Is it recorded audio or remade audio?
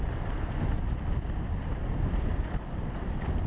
recorded